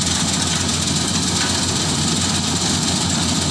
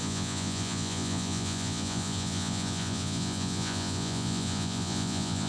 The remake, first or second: second